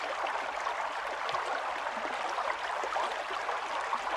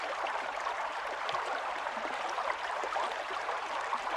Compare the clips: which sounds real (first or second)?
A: first